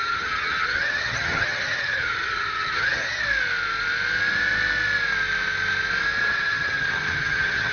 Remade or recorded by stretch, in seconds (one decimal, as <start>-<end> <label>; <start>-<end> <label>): 0.0-3.2 remade; 3.2-6.2 recorded; 6.2-7.7 remade